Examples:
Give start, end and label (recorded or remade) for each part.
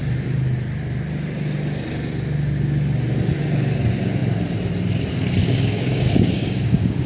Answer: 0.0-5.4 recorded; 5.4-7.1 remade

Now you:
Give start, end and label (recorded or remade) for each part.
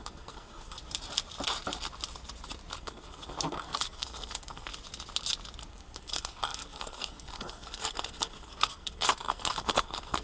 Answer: 0.0-0.8 remade; 0.8-2.8 recorded; 2.8-4.7 remade; 4.7-5.7 recorded; 5.7-10.2 remade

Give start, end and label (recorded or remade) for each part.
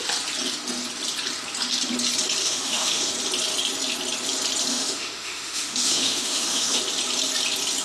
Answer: 0.0-2.4 recorded; 2.4-3.1 remade; 3.1-4.7 recorded; 4.7-6.8 remade; 6.8-7.8 recorded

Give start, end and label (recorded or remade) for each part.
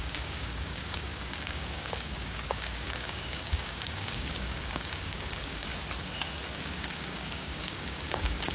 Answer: 0.0-5.7 remade; 5.7-6.5 recorded; 6.5-8.5 remade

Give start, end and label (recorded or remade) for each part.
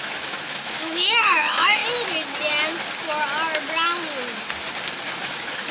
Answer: 0.0-1.8 remade; 1.8-5.2 recorded; 5.2-5.7 remade